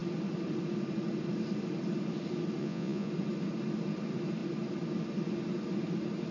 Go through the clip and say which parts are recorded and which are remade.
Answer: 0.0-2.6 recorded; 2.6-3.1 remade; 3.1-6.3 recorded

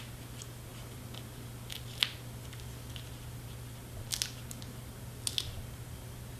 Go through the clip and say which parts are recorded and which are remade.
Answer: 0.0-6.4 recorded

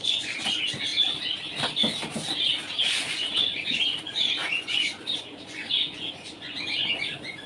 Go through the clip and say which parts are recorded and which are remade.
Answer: 0.0-0.9 remade; 0.9-2.8 recorded; 2.8-7.5 remade

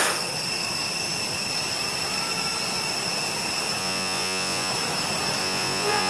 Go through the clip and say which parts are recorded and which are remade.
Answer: 0.0-3.8 recorded; 3.8-4.7 remade; 4.7-5.4 recorded; 5.4-6.1 remade

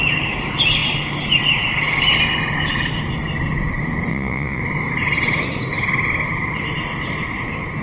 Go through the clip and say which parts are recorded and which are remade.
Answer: 0.0-4.1 recorded; 4.1-4.6 remade; 4.6-7.8 recorded

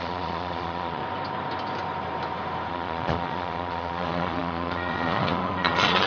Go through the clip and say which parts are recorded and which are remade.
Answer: 0.0-1.0 remade; 1.0-2.7 recorded; 2.7-6.1 remade

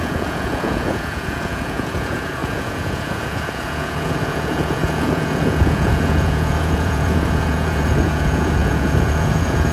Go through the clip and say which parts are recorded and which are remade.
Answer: 0.0-9.7 remade